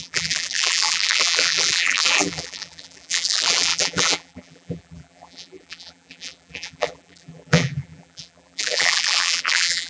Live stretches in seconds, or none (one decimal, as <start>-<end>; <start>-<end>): none